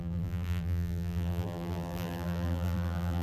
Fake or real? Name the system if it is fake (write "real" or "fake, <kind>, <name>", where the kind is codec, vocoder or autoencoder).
fake, vocoder, BigVGAN v2